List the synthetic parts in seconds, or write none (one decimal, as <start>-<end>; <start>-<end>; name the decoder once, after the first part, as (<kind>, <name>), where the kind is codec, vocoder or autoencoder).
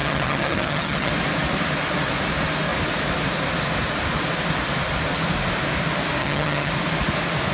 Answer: 0.0-1.1 (vocoder, HiFi-GAN); 6.2-6.7